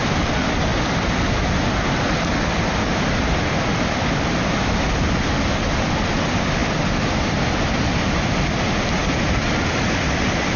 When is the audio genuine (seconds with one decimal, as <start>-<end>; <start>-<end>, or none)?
0.0-10.6